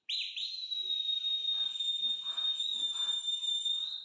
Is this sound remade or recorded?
recorded